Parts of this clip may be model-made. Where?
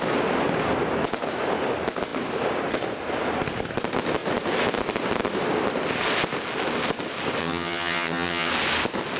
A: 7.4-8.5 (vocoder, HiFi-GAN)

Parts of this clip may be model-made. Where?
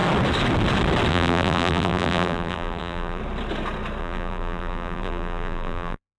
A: 1.1-3.2 (vocoder, BigVGAN v2); 4.0-6.2